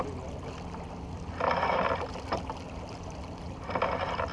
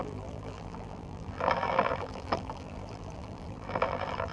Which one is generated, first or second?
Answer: second